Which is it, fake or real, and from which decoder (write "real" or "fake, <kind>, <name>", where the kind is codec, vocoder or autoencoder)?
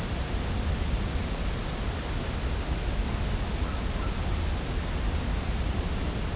real